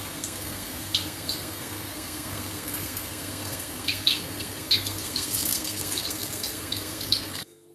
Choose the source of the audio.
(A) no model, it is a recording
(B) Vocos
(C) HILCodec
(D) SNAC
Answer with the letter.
D